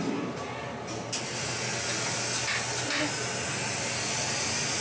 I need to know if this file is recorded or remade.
recorded